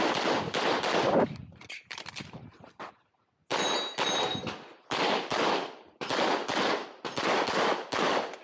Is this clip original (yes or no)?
yes